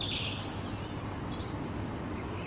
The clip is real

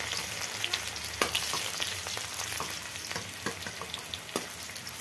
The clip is real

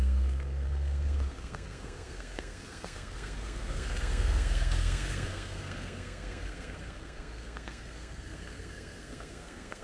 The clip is fake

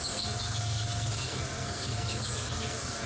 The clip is fake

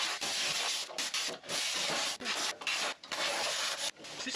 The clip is real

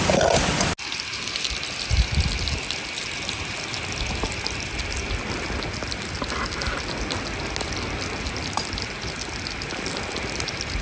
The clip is real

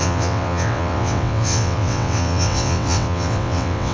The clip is fake